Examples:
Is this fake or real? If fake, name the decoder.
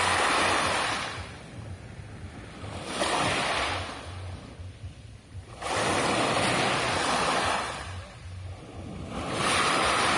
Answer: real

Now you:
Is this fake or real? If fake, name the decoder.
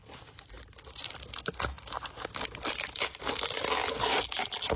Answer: real